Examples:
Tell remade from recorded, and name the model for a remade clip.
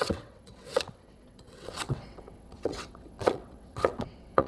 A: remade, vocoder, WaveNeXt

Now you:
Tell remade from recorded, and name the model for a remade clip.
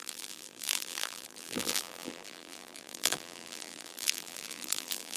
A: remade, vocoder, BigVGAN v2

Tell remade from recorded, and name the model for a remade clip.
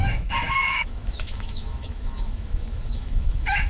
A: remade, autoencoder, DAC-VAE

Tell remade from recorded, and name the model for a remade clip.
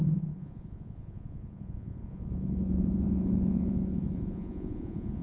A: remade, vocoder, Vocos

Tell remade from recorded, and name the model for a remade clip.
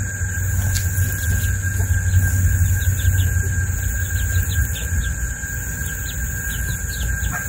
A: recorded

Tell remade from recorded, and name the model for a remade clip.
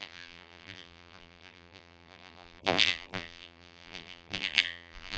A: remade, vocoder, BigVGAN v2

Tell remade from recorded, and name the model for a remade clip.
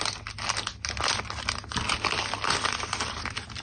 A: recorded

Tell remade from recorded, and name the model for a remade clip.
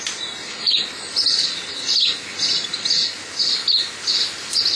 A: recorded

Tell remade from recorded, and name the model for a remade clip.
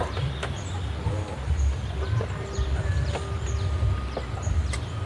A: recorded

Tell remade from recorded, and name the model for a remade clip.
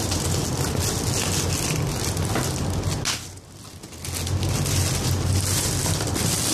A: recorded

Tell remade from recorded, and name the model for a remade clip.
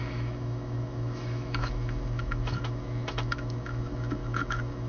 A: remade, autoencoder, DAC-VAE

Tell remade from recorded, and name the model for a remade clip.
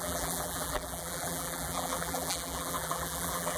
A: remade, vocoder, BigVGAN v2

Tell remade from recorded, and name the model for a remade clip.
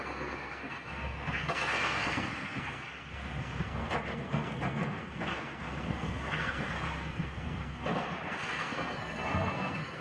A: remade, codec, SNAC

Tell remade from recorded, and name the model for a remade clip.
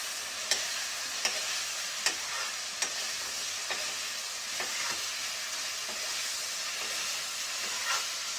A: recorded